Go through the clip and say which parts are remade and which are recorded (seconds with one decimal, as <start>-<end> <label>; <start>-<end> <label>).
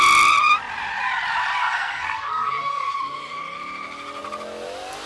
0.0-1.6 recorded; 1.6-2.9 remade; 2.9-5.1 recorded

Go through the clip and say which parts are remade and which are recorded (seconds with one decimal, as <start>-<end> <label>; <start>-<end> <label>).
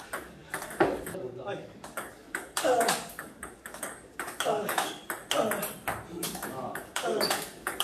0.0-5.0 remade; 5.0-6.2 recorded; 6.2-7.8 remade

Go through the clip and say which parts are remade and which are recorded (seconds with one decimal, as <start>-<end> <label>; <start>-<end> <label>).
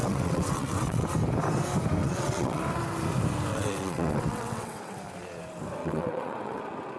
0.0-1.1 remade; 1.1-2.0 recorded; 2.0-2.6 remade; 2.6-3.5 recorded; 3.5-5.0 remade; 5.0-5.8 recorded; 5.8-6.6 remade; 6.6-7.0 recorded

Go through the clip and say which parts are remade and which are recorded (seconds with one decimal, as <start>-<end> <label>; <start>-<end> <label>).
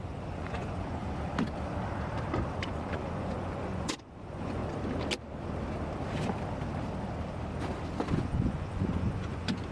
0.0-1.0 remade; 1.0-2.6 recorded; 2.6-4.6 remade; 4.6-8.1 recorded; 8.1-9.7 remade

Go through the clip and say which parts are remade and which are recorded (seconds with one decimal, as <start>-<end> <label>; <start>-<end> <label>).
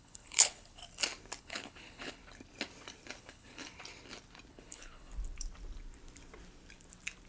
0.0-0.8 remade; 0.8-1.4 recorded; 1.4-2.2 remade; 2.2-3.2 recorded; 3.2-3.6 remade; 3.6-4.5 recorded; 4.5-5.1 remade; 5.1-7.3 recorded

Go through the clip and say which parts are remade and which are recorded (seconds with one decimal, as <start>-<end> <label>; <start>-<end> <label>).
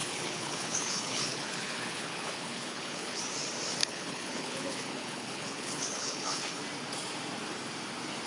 0.0-3.2 remade; 3.2-3.8 recorded; 3.8-6.6 remade; 6.6-8.3 recorded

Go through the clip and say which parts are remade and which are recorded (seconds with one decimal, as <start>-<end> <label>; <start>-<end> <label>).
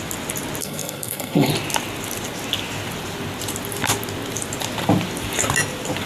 0.0-0.6 recorded; 0.6-1.5 remade; 1.5-6.1 recorded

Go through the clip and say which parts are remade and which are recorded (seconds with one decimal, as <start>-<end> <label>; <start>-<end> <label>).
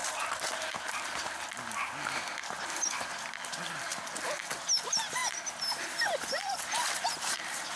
0.0-7.8 recorded